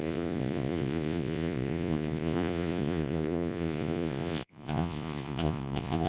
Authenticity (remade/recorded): remade